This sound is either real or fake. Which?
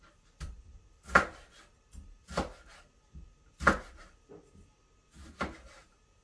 real